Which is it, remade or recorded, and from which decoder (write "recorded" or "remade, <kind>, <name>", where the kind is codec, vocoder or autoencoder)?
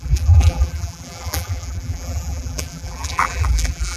remade, vocoder, BigVGAN v2